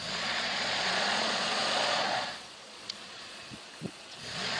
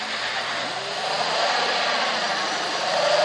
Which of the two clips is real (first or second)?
second